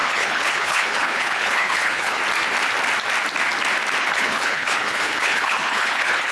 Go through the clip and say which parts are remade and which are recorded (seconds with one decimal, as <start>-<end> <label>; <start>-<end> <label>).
0.0-2.2 remade; 2.2-4.0 recorded; 4.0-6.3 remade